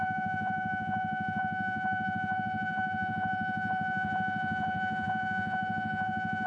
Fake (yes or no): yes